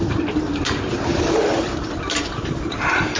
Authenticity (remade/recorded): recorded